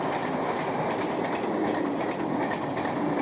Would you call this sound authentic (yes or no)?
yes